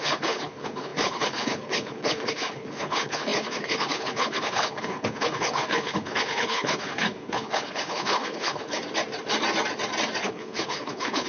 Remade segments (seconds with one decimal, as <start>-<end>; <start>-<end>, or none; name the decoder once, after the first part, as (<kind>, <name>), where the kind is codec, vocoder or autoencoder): 0.0-8.8 (codec, HILCodec); 10.2-11.3